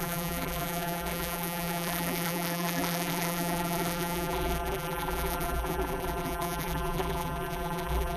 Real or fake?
fake